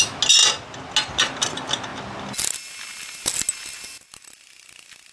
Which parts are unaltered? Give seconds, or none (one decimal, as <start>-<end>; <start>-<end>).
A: 0.0-5.1